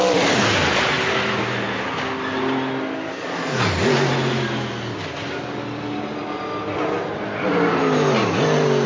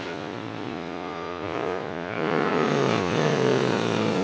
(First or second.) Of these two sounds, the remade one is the second